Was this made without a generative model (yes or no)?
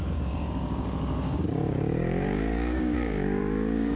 no